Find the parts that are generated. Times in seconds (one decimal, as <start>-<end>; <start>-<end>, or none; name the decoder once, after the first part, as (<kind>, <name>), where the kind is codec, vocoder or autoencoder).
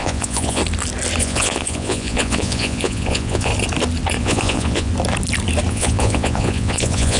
0.0-0.6 (vocoder, Vocos); 1.2-3.5; 4.2-4.9; 5.7-7.2